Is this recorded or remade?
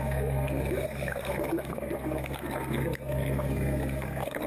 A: remade